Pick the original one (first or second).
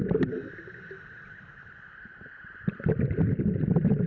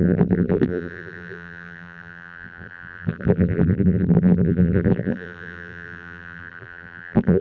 first